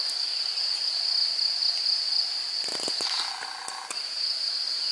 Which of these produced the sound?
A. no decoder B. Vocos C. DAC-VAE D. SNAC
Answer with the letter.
A